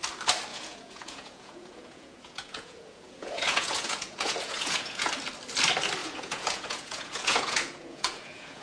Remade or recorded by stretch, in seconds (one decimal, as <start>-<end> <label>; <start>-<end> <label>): 0.0-0.5 recorded; 0.5-5.1 remade; 5.1-6.0 recorded; 6.0-8.6 remade